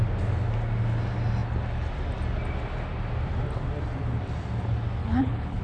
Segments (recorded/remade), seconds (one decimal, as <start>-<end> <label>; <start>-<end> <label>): 0.0-5.0 recorded; 5.0-5.6 remade